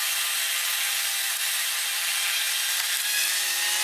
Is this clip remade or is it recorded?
recorded